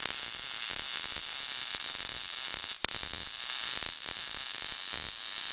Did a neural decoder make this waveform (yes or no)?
no